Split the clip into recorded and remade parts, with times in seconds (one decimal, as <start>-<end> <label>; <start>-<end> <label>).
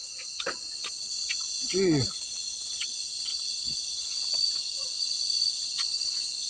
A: 0.0-6.5 remade